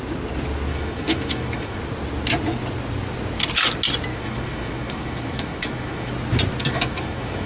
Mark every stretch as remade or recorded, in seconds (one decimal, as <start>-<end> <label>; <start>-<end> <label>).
0.0-0.7 recorded; 0.7-1.8 remade; 1.8-4.1 recorded; 4.1-6.1 remade; 6.1-6.6 recorded; 6.6-7.5 remade

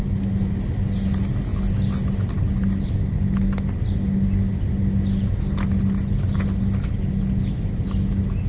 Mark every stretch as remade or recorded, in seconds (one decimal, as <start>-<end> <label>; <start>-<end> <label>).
0.0-8.5 recorded

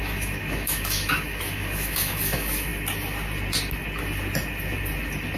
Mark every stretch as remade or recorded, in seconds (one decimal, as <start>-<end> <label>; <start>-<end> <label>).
0.0-2.7 remade; 2.7-5.4 recorded

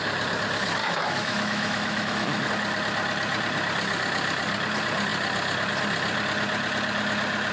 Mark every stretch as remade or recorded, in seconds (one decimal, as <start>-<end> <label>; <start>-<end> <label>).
0.0-0.8 recorded; 0.8-2.5 remade; 2.5-7.5 recorded

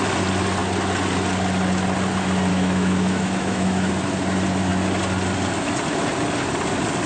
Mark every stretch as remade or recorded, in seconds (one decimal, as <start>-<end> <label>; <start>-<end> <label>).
0.0-2.5 recorded; 2.5-3.9 remade; 3.9-7.1 recorded

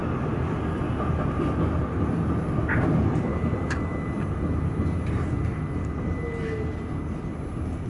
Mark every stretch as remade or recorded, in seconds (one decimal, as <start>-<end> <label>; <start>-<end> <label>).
0.0-7.9 recorded

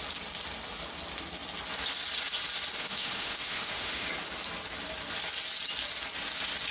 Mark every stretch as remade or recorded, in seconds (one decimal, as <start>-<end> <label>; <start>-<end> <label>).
0.0-2.8 recorded; 2.8-4.1 remade; 4.1-6.7 recorded

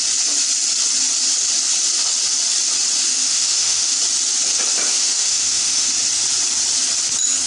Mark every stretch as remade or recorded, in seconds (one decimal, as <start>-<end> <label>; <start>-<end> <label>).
0.0-3.1 recorded; 3.1-4.0 remade; 4.0-4.9 recorded; 4.9-5.9 remade; 5.9-7.5 recorded